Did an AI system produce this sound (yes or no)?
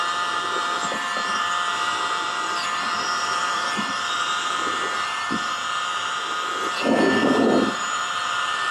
yes